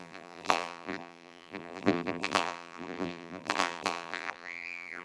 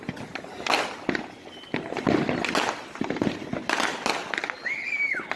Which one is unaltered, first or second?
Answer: second